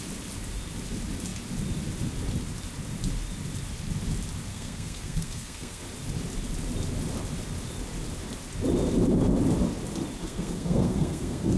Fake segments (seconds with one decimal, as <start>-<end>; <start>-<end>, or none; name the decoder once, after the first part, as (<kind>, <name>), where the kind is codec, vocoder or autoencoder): 4.5-5.8 (codec, SNAC); 10.2-11.6